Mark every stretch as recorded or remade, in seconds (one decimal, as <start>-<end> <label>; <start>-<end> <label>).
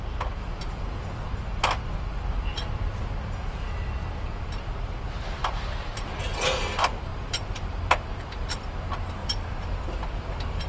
0.0-5.4 recorded; 5.4-6.2 remade; 6.2-7.1 recorded; 7.1-8.5 remade; 8.5-9.2 recorded; 9.2-9.8 remade; 9.8-10.7 recorded